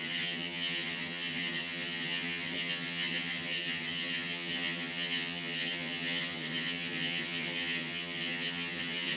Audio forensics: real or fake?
fake